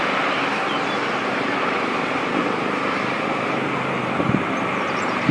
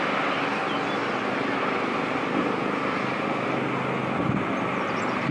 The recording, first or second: second